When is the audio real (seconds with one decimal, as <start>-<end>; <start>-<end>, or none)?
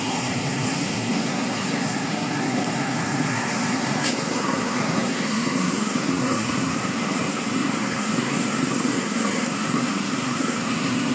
none